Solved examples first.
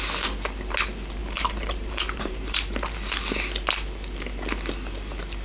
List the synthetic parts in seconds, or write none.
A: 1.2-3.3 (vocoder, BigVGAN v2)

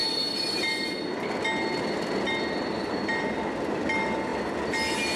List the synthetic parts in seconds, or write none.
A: none

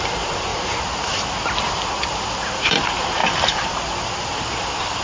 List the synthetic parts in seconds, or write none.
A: 0.0-0.5 (vocoder, BigVGAN v2); 2.4-3.2; 4.4-5.0

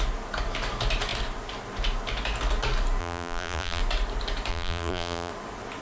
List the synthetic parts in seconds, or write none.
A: 3.0-3.8 (vocoder, BigVGAN v2); 4.5-5.3

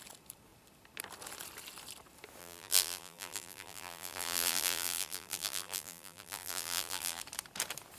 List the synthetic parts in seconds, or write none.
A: 2.4-7.2 (vocoder, BigVGAN v2)

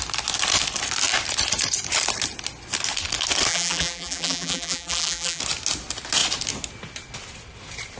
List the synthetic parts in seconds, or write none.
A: 3.5-5.4 (vocoder, BigVGAN v2)

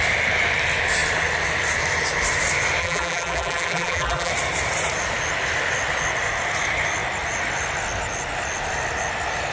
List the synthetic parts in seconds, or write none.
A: 2.8-4.3 (vocoder, BigVGAN v2)